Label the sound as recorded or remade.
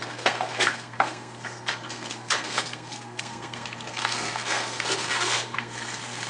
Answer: remade